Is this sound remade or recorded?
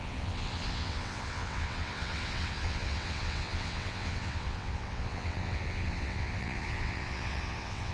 remade